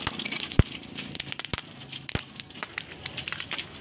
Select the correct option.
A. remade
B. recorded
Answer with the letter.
B